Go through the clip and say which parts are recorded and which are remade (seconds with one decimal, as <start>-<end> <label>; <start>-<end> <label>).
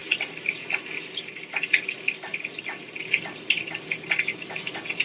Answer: 0.0-5.0 recorded